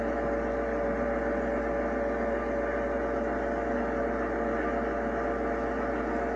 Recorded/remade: recorded